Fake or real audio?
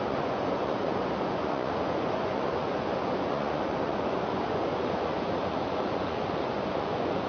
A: fake